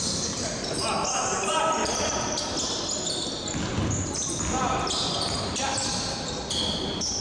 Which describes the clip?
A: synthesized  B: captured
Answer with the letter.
B